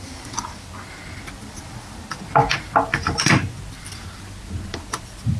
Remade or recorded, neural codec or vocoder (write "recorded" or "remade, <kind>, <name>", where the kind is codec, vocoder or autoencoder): recorded